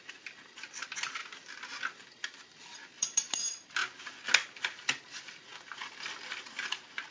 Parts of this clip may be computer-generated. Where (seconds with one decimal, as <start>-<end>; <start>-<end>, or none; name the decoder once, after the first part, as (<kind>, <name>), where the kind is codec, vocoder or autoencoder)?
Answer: 0.0-1.2 (vocoder, BigVGAN v2); 1.8-3.8; 4.5-5.5; 6.2-7.1